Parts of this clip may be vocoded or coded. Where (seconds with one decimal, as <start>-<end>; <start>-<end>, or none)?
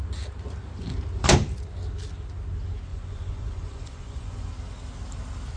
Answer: 2.9-4.5